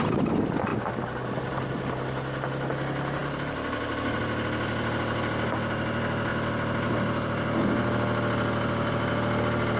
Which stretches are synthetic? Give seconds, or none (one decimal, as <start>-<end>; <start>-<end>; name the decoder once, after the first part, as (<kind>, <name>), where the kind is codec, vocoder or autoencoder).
none